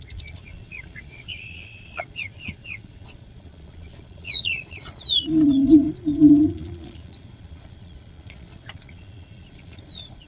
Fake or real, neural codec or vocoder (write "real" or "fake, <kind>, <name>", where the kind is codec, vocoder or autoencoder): fake, vocoder, Vocos